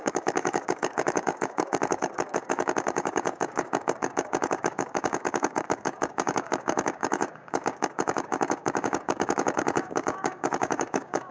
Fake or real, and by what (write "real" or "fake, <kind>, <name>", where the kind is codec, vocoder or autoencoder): fake, codec, DAC